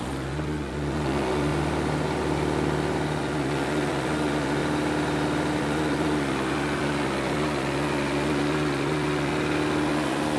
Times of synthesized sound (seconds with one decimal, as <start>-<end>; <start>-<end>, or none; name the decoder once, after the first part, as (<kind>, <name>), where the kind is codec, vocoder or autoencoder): 0.0-1.5 (vocoder, Vocos); 3.2-4.6; 5.6-9.3; 9.9-10.4